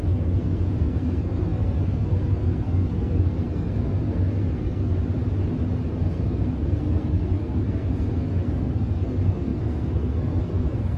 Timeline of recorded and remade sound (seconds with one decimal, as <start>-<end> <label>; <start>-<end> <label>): 0.0-4.9 remade; 4.9-5.9 recorded; 5.9-11.0 remade